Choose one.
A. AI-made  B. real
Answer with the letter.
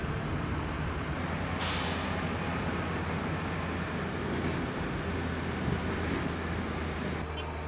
B